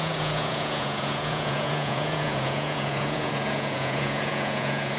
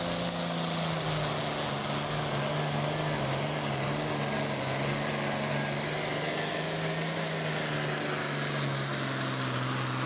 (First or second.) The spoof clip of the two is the first